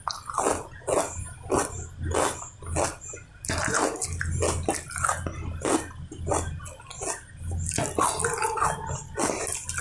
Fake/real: real